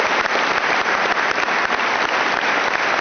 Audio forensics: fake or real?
real